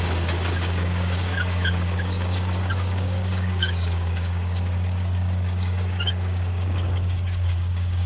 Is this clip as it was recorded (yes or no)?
no